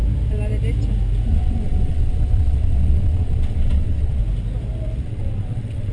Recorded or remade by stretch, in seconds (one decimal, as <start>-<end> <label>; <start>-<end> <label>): 0.0-1.3 recorded; 1.3-4.2 remade; 4.2-5.0 recorded; 5.0-5.9 remade